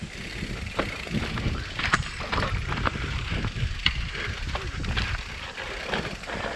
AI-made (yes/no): no